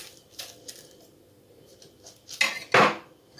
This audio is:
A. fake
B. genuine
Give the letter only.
B